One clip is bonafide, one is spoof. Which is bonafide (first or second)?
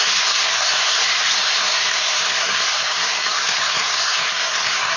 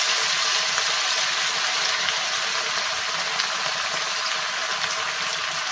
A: second